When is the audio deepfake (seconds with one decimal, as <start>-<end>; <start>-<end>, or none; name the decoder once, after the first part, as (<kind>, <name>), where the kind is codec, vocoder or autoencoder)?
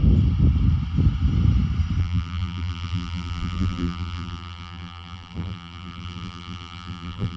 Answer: 2.0-7.4 (vocoder, BigVGAN v2)